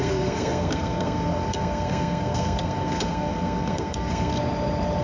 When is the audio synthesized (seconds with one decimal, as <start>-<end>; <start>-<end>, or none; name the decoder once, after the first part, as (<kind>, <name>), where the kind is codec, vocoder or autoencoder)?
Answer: 0.0-4.3 (codec, SNAC)